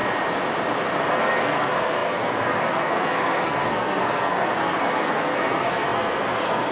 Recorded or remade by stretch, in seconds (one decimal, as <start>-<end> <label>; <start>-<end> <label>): 0.0-1.1 recorded; 1.1-6.7 remade